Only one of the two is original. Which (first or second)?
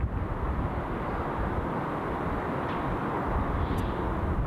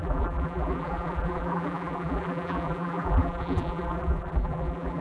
first